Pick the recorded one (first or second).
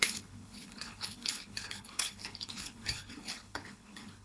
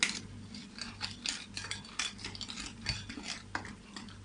second